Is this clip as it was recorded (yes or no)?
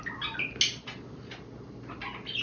yes